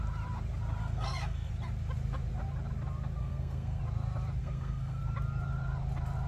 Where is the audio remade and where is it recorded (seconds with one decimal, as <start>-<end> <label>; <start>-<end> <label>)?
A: 0.0-0.8 recorded; 0.8-1.5 remade; 1.5-3.2 recorded; 3.2-3.8 remade; 3.8-4.4 recorded; 4.4-5.0 remade; 5.0-6.3 recorded